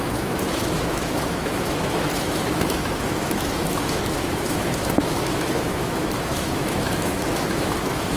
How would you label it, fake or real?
fake